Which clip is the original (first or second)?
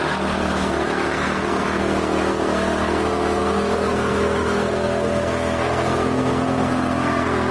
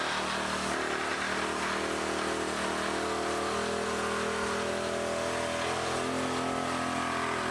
second